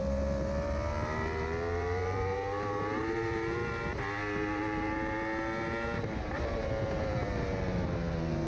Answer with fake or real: fake